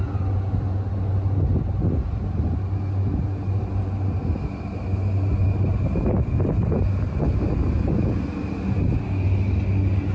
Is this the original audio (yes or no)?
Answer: yes